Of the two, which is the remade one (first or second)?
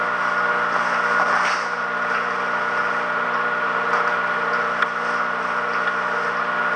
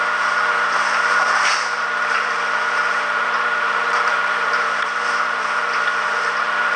second